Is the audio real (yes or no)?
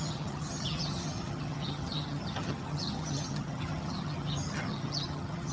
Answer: no